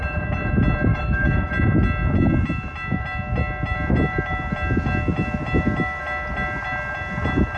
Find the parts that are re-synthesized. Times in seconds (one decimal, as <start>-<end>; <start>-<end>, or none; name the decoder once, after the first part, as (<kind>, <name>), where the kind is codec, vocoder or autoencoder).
0.9-1.5 (autoencoder, DAC-VAE)